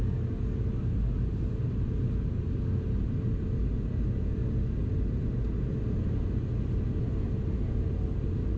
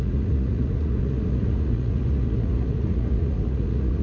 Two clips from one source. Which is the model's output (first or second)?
second